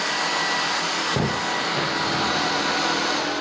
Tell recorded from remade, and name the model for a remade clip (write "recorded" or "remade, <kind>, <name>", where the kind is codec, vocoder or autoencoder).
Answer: recorded